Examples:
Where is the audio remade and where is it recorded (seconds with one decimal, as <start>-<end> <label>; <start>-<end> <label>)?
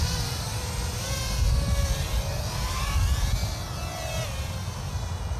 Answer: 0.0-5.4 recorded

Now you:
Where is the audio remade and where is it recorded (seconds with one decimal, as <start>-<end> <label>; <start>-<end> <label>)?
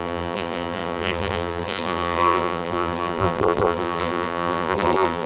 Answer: 0.0-5.3 remade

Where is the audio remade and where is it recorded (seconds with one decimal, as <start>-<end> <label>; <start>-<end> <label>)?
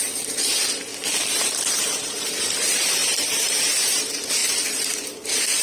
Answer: 0.0-0.9 remade; 0.9-1.4 recorded; 1.4-5.6 remade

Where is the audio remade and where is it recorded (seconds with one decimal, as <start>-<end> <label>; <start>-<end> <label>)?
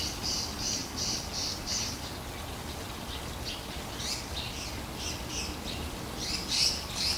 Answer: 0.0-7.2 recorded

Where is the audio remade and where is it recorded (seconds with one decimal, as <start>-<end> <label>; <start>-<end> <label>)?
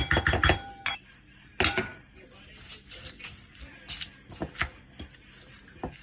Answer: 0.0-0.8 recorded; 0.8-1.9 remade; 1.9-5.5 recorded; 5.5-6.0 remade